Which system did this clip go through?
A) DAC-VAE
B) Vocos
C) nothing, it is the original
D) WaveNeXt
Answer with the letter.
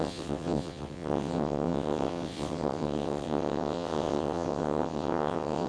D